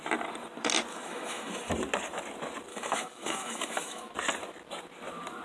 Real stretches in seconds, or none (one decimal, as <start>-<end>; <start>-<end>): 0.0-0.9; 1.7-2.7; 4.1-5.4